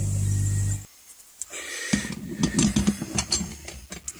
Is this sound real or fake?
real